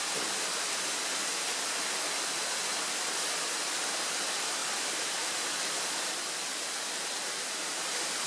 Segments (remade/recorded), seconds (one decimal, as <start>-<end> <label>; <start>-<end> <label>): 0.0-8.3 recorded